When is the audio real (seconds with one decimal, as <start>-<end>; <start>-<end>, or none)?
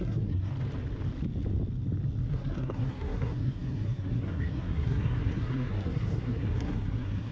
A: 0.5-2.3